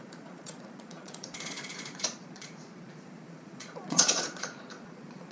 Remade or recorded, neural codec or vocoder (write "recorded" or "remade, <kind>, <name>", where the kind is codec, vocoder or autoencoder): remade, vocoder, Vocos